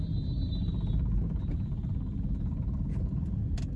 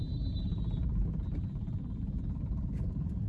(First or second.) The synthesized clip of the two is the second